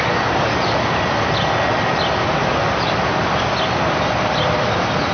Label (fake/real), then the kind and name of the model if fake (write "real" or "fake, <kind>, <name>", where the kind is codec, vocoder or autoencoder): real